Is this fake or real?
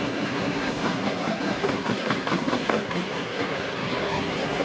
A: fake